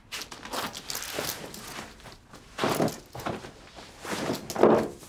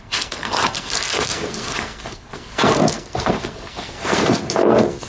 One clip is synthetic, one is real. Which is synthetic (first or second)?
second